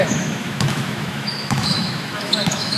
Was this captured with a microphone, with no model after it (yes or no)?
no